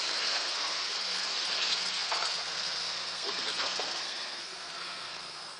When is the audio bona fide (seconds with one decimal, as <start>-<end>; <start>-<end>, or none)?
none

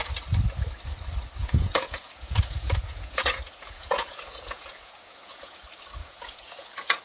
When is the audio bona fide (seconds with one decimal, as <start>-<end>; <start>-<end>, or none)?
0.0-1.4; 5.6-6.0

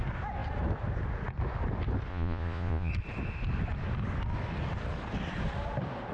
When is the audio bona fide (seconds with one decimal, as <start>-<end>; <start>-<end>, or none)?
0.0-2.1; 2.9-6.1

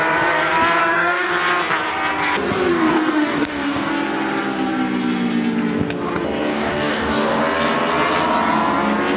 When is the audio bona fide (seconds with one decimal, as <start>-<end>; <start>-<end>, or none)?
0.0-0.8; 1.3-2.7; 3.9-6.5; 7.4-9.2

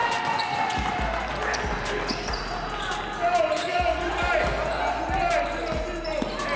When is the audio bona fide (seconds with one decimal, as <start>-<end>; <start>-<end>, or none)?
0.0-6.6

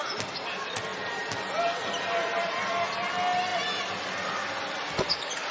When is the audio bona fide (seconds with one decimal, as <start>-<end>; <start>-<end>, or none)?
0.0-5.5

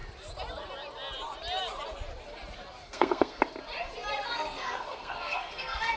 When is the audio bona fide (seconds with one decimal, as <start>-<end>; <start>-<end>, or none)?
0.0-2.8; 3.4-4.1